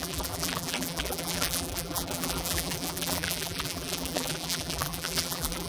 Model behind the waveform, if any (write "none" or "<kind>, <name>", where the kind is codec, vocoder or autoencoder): vocoder, BigVGAN v2